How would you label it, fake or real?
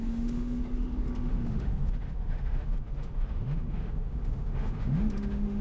fake